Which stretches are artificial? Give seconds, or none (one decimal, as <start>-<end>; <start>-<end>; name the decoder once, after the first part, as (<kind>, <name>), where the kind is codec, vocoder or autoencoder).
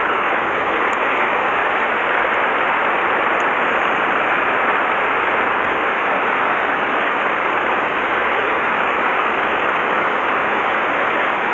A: 0.0-1.6 (codec, DAC); 5.5-11.5